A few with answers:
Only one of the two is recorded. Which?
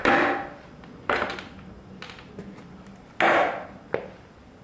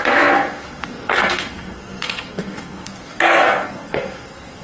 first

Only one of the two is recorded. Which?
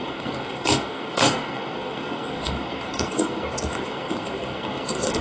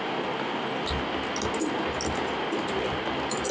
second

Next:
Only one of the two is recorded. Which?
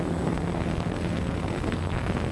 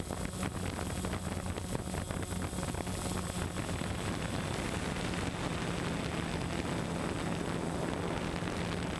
second